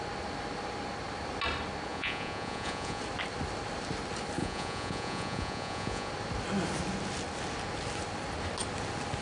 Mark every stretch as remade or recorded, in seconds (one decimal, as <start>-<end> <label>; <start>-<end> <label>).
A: 0.0-1.9 recorded; 1.9-3.0 remade; 3.0-4.4 recorded; 4.4-6.1 remade; 6.1-9.2 recorded